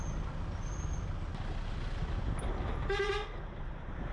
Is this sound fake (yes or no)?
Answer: no